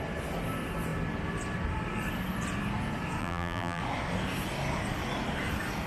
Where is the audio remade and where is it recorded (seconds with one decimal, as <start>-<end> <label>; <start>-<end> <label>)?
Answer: 0.0-3.2 recorded; 3.2-3.8 remade; 3.8-5.9 recorded